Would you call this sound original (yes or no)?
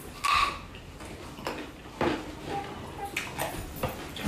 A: yes